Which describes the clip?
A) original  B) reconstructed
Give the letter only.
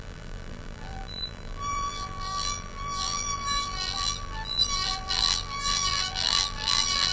B